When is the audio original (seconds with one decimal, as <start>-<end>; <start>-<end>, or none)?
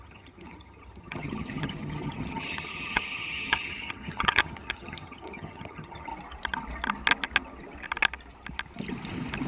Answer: 6.1-9.5